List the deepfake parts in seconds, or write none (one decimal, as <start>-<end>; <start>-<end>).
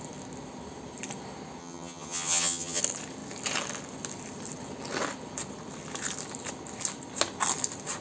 1.6-2.8